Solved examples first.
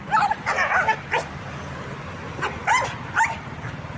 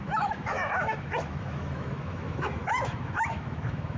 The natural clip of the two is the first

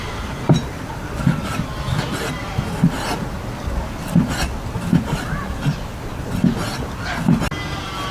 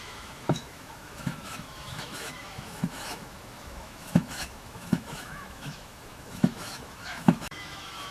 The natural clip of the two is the first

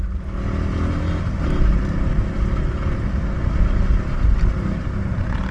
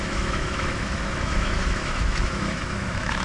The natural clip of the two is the first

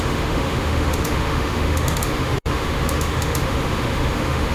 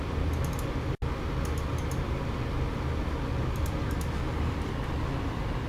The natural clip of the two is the second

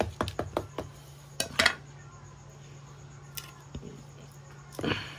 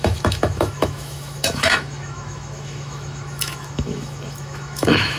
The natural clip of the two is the first